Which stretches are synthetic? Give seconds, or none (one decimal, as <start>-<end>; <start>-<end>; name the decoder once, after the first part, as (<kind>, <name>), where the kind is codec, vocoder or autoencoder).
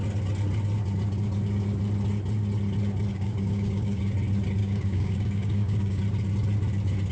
3.1-4.0 (codec, DAC); 4.6-6.0